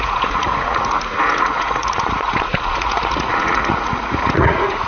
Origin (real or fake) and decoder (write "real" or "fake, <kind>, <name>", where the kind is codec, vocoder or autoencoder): fake, vocoder, Vocos